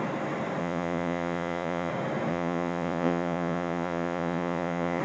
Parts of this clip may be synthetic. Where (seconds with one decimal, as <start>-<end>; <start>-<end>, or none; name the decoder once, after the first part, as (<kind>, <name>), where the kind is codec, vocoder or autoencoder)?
0.6-1.9 (vocoder, Vocos); 2.3-5.0